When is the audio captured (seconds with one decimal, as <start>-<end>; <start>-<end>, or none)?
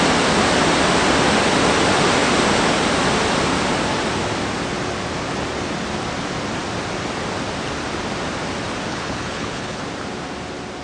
0.0-8.9; 9.8-10.8